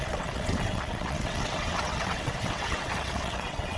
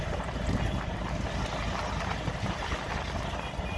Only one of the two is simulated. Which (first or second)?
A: first